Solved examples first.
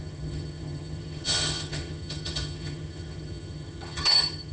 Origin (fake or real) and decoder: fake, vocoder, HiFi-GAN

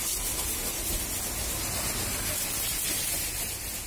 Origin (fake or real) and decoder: real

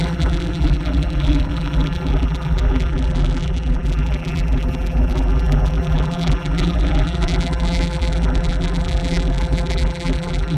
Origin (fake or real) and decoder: fake, vocoder, BigVGAN v2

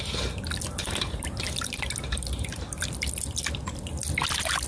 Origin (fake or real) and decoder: fake, vocoder, BigVGAN v2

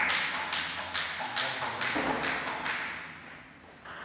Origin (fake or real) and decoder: real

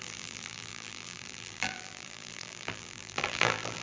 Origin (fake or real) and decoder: fake, vocoder, BigVGAN v2